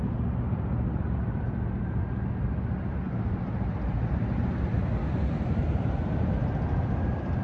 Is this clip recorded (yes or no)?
yes